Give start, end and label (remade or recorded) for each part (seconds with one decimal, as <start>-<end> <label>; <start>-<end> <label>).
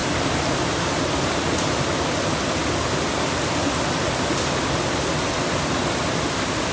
0.0-6.7 recorded